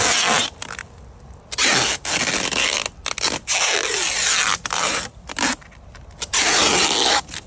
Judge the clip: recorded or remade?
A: recorded